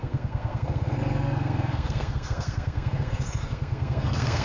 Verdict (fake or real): fake